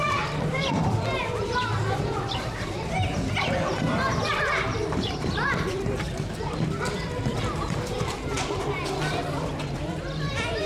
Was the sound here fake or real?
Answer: fake